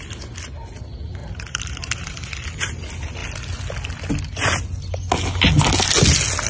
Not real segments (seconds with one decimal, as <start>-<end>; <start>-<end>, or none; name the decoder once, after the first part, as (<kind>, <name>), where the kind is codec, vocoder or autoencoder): 1.2-2.3 (vocoder, BigVGAN v2)